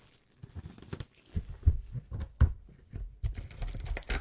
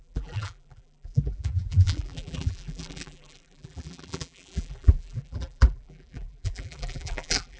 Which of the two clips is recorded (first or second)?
first